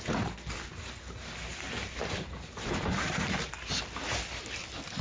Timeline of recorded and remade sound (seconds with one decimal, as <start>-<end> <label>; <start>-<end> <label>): 0.0-1.5 recorded; 1.5-3.5 remade; 3.5-5.0 recorded